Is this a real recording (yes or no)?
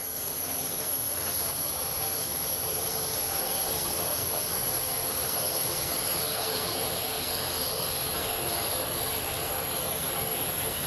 no